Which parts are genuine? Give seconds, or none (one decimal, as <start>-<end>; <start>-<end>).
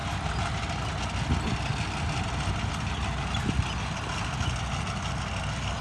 0.0-5.8